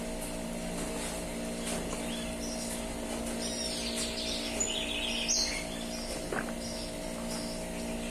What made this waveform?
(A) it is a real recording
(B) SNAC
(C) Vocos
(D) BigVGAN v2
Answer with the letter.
A